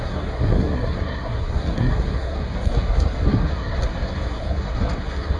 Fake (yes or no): yes